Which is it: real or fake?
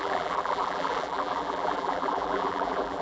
fake